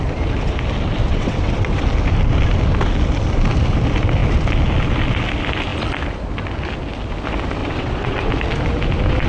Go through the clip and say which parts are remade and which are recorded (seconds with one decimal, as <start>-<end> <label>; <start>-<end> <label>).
0.0-1.0 recorded; 1.0-1.8 remade; 1.8-7.6 recorded; 7.6-8.3 remade; 8.3-9.3 recorded